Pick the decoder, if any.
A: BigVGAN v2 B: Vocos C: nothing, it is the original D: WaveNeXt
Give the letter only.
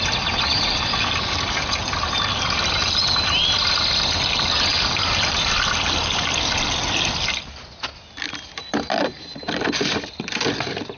C